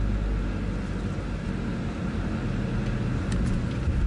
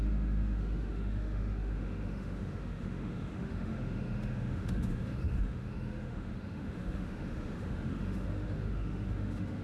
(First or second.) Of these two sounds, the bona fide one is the first